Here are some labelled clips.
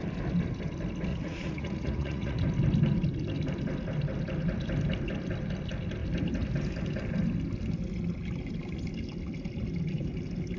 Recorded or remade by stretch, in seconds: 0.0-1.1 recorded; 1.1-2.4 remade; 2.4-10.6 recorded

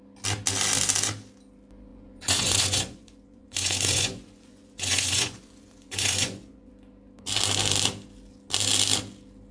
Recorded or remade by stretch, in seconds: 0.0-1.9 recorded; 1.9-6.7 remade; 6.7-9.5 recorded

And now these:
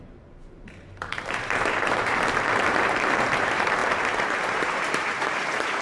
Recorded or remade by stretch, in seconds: 0.0-5.8 remade